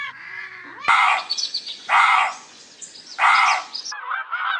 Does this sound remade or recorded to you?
remade